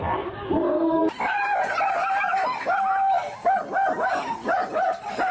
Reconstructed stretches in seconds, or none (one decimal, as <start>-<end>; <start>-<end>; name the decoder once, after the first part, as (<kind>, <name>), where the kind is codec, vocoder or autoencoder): none